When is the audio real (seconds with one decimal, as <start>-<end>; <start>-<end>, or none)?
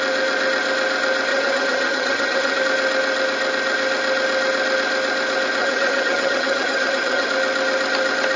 0.0-1.3; 2.6-5.6; 7.3-8.4